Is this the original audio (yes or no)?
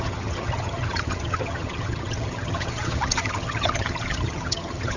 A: no